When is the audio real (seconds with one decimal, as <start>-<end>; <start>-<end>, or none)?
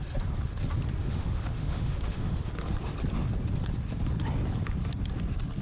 0.0-1.0; 2.5-5.6